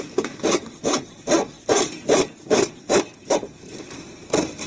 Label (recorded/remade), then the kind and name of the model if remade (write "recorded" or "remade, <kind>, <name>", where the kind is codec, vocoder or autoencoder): recorded